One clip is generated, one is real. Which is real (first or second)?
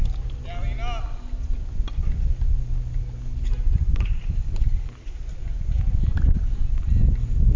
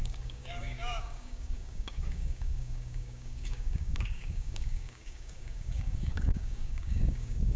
first